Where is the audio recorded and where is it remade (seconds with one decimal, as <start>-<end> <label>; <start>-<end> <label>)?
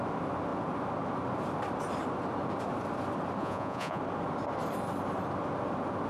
0.0-3.4 recorded; 3.4-4.0 remade; 4.0-6.1 recorded